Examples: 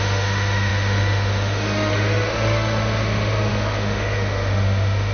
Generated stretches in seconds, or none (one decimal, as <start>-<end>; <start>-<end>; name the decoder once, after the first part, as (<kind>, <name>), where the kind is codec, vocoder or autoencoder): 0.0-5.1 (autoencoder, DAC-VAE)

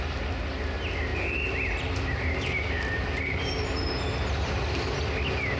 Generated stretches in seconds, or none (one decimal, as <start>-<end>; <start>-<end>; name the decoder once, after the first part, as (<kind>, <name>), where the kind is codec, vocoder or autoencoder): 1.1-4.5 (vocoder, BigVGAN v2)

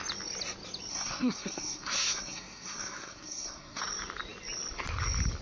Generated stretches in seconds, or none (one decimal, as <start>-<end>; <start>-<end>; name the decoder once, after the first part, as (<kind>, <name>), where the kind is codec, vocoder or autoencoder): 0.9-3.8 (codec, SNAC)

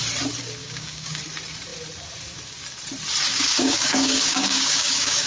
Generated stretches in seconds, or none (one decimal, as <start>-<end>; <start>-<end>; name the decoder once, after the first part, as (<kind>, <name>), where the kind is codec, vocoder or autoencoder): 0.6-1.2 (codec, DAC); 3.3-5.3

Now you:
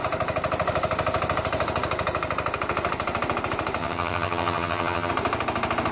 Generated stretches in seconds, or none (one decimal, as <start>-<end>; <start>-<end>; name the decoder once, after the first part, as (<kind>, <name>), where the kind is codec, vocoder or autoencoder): 3.8-5.1 (vocoder, HiFi-GAN)